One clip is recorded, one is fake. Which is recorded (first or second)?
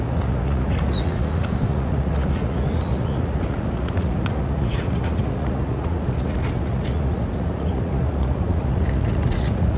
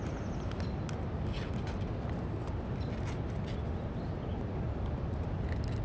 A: second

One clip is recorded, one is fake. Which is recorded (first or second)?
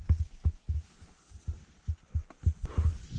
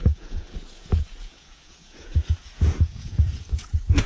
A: first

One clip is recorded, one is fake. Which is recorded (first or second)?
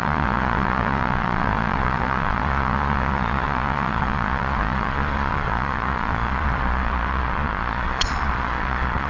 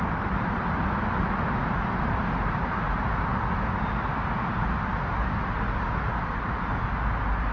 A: second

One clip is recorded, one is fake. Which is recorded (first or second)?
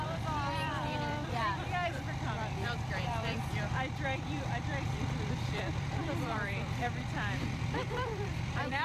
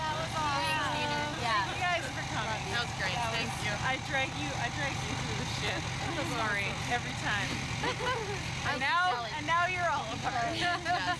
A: second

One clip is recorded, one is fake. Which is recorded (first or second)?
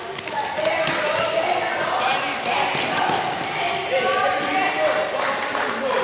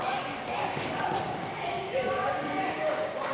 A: first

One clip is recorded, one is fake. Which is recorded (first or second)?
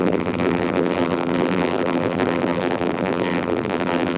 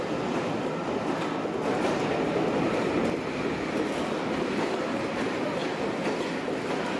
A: second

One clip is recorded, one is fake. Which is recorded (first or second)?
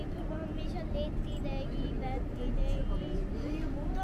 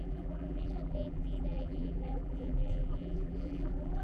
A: first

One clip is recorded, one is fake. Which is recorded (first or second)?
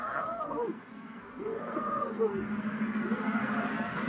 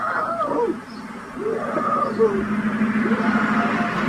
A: second